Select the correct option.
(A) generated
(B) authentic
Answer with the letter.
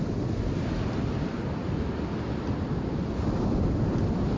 B